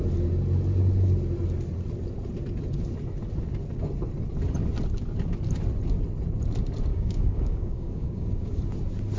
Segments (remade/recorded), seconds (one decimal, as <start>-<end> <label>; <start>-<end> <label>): 0.0-6.9 recorded; 6.9-8.6 remade; 8.6-9.2 recorded